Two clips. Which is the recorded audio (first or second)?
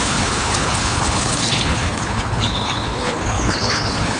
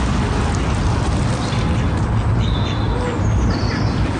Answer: second